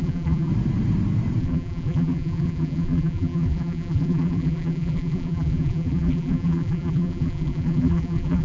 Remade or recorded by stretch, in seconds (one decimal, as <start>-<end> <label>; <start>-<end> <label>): 0.0-0.5 remade; 0.5-1.4 recorded; 1.4-8.4 remade